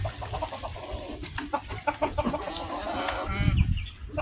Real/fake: real